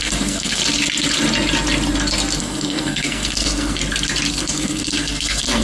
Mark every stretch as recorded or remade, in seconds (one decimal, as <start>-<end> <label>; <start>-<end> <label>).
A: 0.0-0.6 remade; 0.6-2.4 recorded; 2.4-3.8 remade; 3.8-4.3 recorded; 4.3-5.6 remade